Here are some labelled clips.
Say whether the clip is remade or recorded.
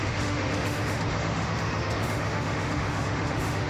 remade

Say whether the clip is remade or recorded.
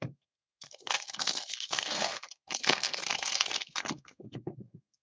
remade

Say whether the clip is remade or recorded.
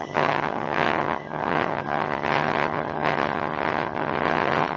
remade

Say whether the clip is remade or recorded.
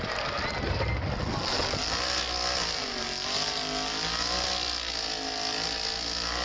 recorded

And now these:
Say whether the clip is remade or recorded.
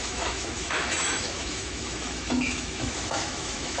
remade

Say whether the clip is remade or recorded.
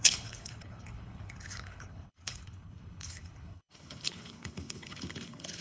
remade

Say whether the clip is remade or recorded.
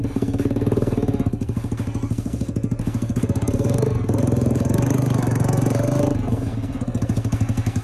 remade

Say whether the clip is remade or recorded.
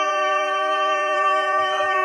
remade